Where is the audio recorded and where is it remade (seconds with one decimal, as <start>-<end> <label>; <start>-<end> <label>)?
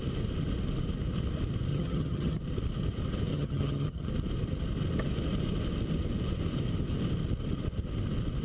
0.0-1.7 recorded; 1.7-2.4 remade; 2.4-3.3 recorded; 3.3-4.1 remade; 4.1-8.4 recorded